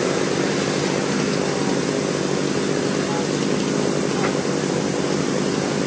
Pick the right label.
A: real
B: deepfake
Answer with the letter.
A